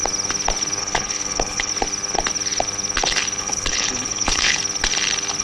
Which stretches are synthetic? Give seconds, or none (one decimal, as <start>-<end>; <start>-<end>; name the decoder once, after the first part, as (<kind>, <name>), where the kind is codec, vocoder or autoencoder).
0.8-1.7 (codec, HILCodec); 3.4-4.6